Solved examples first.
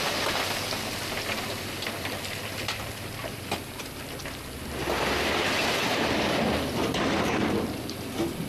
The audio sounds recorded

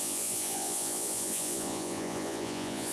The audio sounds remade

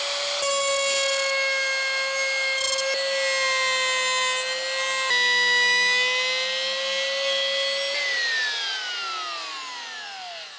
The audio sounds recorded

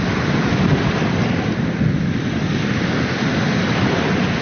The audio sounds recorded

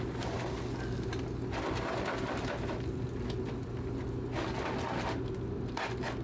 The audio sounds recorded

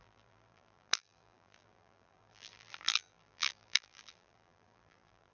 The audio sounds remade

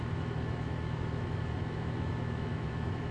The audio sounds remade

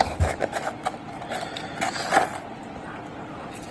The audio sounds recorded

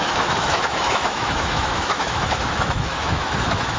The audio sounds remade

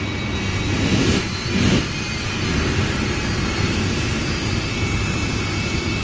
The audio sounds recorded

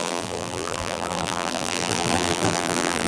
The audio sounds remade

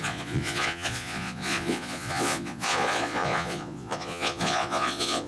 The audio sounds remade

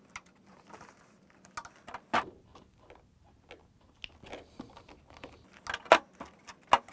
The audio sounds recorded